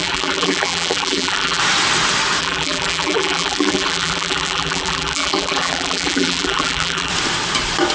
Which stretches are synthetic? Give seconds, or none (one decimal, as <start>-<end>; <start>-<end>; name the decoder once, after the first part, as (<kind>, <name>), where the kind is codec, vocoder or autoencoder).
0.0-1.6 (vocoder, BigVGAN v2); 2.4-7.1